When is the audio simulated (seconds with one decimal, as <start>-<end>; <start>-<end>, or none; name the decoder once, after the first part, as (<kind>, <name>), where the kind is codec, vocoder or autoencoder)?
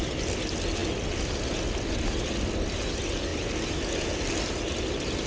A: none